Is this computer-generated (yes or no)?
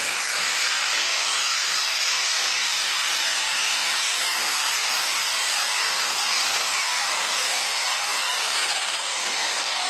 yes